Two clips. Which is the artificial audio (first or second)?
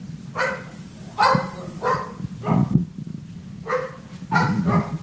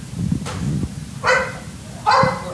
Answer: first